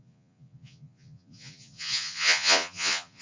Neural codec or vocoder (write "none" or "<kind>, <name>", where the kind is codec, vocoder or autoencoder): vocoder, Vocos